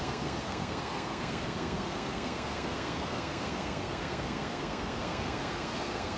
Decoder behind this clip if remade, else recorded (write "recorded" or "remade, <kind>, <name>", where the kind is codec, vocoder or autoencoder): remade, codec, SNAC